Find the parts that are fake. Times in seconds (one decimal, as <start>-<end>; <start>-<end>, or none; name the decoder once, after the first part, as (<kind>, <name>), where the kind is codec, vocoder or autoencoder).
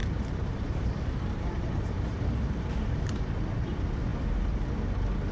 0.0-3.2 (vocoder, BigVGAN v2)